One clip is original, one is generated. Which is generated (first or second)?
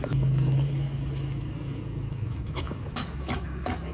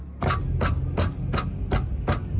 first